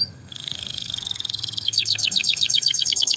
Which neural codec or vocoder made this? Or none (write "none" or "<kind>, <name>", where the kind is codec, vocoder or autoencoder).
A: codec, SNAC